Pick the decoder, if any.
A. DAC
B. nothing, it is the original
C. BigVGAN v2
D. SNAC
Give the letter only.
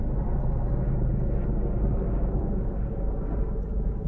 C